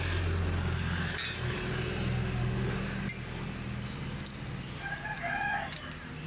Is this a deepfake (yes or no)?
no